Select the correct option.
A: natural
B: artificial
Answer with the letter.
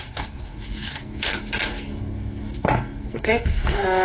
B